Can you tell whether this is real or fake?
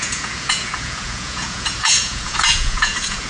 fake